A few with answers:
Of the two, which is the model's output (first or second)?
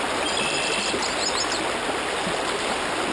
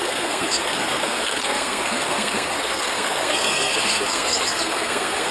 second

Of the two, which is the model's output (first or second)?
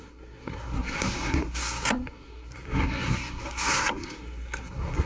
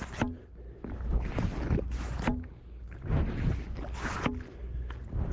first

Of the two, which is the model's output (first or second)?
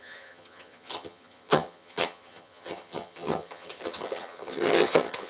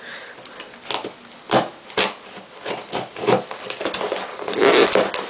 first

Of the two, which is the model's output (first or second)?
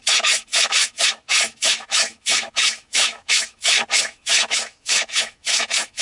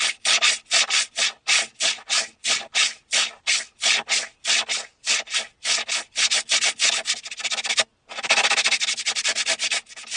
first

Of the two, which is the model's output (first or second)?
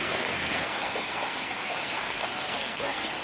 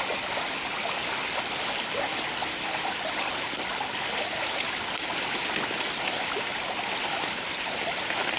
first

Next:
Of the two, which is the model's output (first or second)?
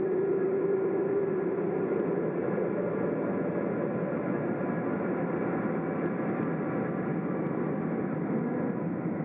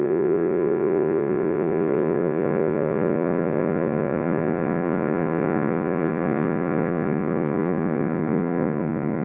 second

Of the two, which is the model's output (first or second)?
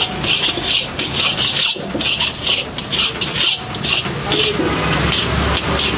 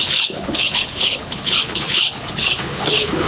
second